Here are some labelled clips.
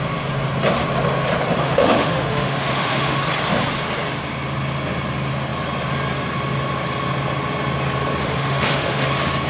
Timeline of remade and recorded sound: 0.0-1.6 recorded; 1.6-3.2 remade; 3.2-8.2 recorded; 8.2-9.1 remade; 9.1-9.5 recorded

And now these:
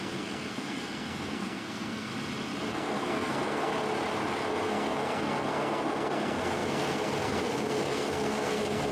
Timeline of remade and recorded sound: 0.0-2.1 remade; 2.1-2.7 recorded; 2.7-3.7 remade; 3.7-4.5 recorded; 4.5-8.9 remade

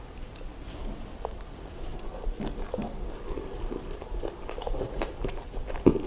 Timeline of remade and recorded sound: 0.0-6.1 recorded

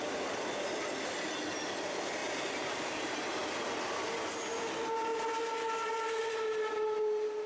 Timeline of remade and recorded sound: 0.0-2.2 recorded; 2.2-3.3 remade; 3.3-7.5 recorded

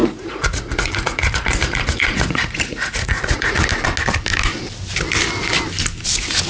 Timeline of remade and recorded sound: 0.0-3.7 remade; 3.7-6.5 recorded

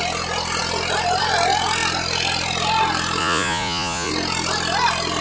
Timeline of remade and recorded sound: 0.0-3.2 recorded; 3.2-4.1 remade; 4.1-5.2 recorded